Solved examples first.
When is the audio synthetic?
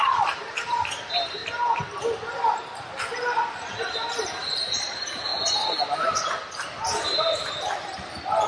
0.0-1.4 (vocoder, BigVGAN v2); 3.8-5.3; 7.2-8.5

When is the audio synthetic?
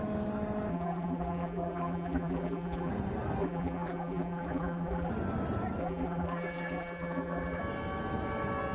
0.7-2.9 (vocoder, BigVGAN v2); 3.4-5.1; 5.8-7.6